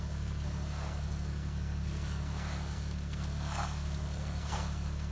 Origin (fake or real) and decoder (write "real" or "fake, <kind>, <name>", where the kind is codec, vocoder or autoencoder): fake, codec, SNAC